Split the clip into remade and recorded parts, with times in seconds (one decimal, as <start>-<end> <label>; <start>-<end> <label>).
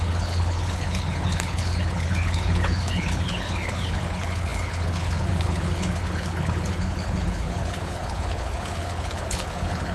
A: 0.0-9.9 remade